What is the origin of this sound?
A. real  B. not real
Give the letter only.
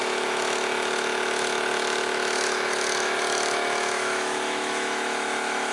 B